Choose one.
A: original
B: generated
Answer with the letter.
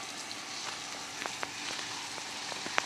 A